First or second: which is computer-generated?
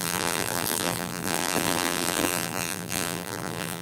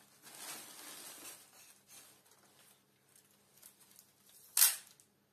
first